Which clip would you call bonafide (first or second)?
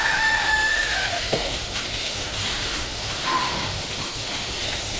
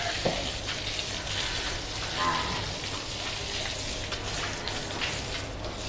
second